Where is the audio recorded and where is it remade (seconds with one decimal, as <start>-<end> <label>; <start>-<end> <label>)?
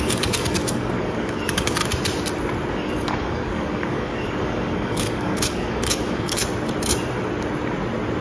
0.0-1.8 remade; 1.8-2.7 recorded; 2.7-6.4 remade; 6.4-8.2 recorded